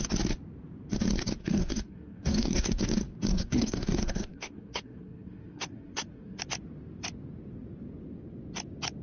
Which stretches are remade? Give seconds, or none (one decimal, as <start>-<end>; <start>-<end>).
1.4-2.8; 3.3-6.4